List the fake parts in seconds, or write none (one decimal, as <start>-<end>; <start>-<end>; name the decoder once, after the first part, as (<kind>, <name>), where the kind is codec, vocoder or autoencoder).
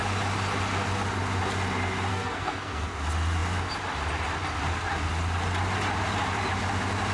2.1-2.9 (codec, SNAC)